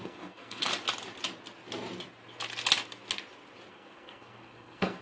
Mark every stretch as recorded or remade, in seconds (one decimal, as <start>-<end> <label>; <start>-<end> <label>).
0.0-0.7 remade; 0.7-3.7 recorded; 3.7-5.0 remade